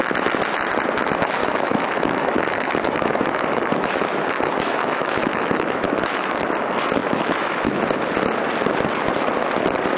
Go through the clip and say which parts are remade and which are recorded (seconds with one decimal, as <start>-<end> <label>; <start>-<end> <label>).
0.0-1.4 recorded; 1.4-6.4 remade; 6.4-7.0 recorded; 7.0-7.8 remade; 7.8-10.0 recorded